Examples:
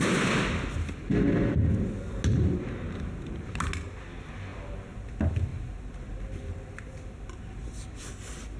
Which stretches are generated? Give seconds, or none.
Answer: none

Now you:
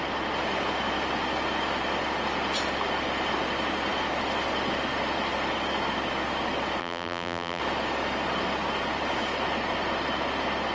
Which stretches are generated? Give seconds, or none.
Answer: 6.8-7.6 (vocoder, BigVGAN v2)

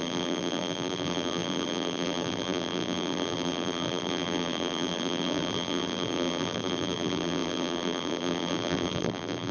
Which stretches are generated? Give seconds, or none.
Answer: 0.0-9.5 (vocoder, BigVGAN v2)

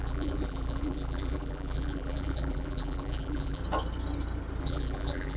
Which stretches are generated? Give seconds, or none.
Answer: 0.0-3.6 (vocoder, BigVGAN v2); 4.6-5.4

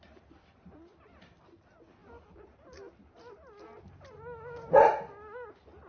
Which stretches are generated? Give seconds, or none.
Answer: 0.0-2.0 (vocoder, BigVGAN v2); 5.5-5.9

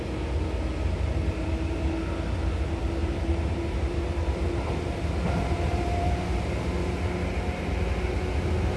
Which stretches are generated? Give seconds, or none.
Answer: 3.0-6.6 (vocoder, BigVGAN v2)